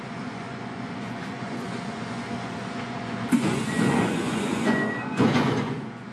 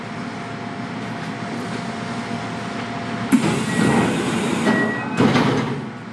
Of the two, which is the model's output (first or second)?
first